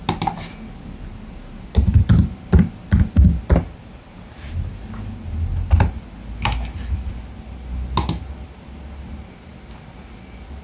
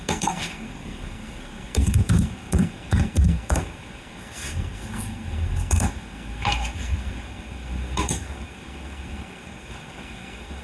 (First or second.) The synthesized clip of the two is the second